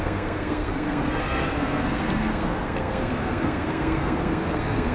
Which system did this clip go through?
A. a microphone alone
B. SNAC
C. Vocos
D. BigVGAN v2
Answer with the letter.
B